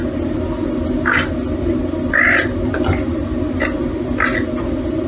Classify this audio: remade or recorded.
recorded